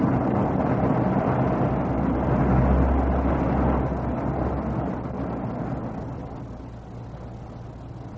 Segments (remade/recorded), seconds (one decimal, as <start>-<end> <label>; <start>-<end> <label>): 0.0-8.2 recorded